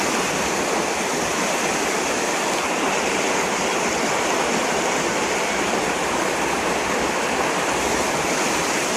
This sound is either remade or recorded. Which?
recorded